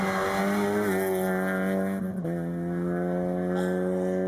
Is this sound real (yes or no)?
yes